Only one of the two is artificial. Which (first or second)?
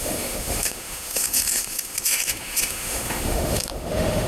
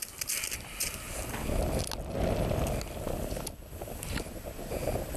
first